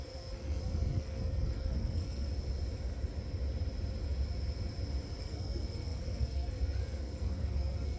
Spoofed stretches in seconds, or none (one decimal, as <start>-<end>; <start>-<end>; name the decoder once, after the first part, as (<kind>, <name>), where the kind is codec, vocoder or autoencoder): 0.0-2.3 (codec, SNAC); 5.2-8.0